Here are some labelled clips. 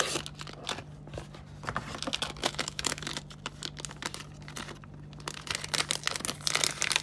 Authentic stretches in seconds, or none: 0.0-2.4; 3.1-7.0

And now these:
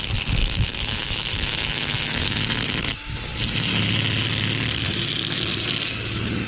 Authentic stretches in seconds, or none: 0.0-0.4; 2.4-6.5

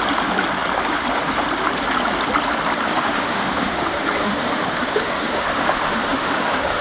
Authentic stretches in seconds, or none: 0.0-2.9

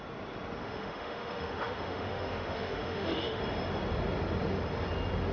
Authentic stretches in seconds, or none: 0.0-0.6; 3.4-5.3

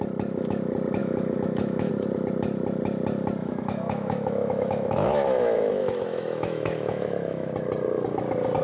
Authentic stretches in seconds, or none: 0.0-1.0; 1.9-3.4; 7.5-8.6

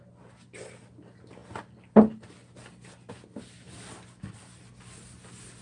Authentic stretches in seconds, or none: 0.0-5.6